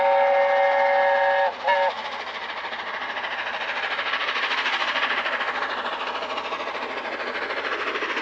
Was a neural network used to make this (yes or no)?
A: no